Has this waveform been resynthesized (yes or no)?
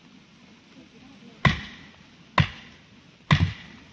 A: no